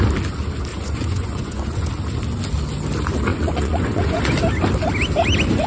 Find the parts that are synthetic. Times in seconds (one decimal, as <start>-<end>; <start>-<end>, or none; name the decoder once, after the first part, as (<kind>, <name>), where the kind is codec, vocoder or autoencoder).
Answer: 0.7-1.9 (vocoder, Vocos); 3.3-4.2